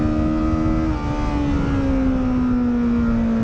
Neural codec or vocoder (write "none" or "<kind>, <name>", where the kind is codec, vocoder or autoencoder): none